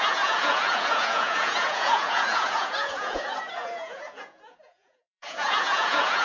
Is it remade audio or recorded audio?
remade